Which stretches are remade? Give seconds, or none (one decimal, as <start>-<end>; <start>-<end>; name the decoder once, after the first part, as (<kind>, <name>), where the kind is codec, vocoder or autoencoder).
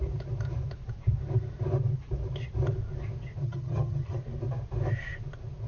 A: 3.4-4.2 (vocoder, HiFi-GAN)